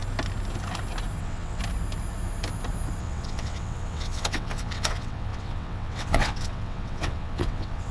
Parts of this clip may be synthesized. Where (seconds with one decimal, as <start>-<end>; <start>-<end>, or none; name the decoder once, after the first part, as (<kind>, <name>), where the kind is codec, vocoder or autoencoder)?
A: 1.2-1.6 (vocoder, WaveNeXt); 3.0-7.9